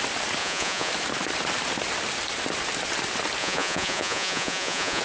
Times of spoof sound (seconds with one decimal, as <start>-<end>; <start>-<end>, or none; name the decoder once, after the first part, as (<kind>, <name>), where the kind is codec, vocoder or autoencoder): 0.4-0.9 (vocoder, Vocos); 3.4-5.0

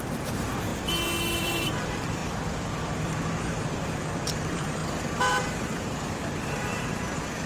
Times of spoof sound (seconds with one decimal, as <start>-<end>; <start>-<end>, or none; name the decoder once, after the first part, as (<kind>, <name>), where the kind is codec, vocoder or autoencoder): 0.0-0.7 (vocoder, BigVGAN v2); 1.4-4.8; 5.3-7.5